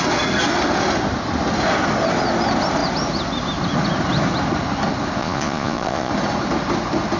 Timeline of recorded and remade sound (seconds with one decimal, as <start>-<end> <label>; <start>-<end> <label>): 0.0-5.2 recorded; 5.2-6.1 remade; 6.1-7.2 recorded